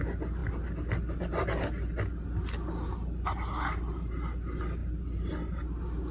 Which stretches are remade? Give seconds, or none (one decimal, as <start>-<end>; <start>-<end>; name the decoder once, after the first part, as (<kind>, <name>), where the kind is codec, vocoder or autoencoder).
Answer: none